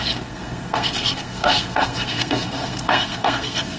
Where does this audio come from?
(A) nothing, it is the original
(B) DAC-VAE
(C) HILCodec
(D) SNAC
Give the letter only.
D